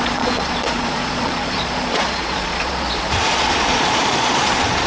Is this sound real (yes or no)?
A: no